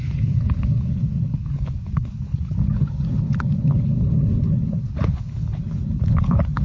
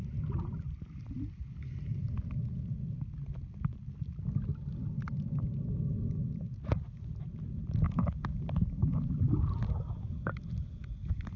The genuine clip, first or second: second